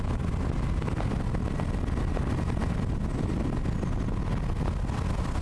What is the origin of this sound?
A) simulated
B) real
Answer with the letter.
B